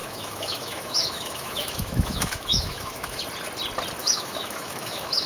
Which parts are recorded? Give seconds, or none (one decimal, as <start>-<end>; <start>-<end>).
3.2-4.0

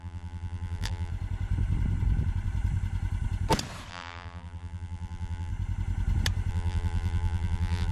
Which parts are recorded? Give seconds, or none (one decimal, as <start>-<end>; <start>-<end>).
1.1-3.9; 5.5-6.5

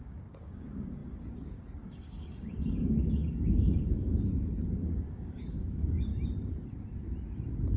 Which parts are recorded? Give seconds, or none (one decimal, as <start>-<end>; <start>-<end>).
6.1-7.8